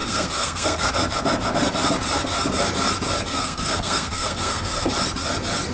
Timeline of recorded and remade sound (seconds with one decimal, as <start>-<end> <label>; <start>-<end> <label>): 0.0-0.9 remade; 0.9-3.3 recorded; 3.3-4.9 remade; 4.9-5.7 recorded